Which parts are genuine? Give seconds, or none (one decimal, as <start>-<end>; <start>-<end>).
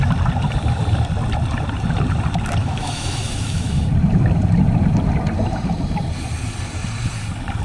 0.0-2.6; 3.8-7.6